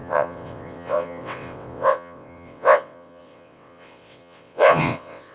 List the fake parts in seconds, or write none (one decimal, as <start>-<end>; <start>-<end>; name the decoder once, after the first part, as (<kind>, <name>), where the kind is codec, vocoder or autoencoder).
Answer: 0.0-5.3 (vocoder, WaveNeXt)